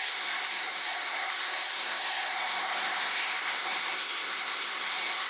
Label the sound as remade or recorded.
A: remade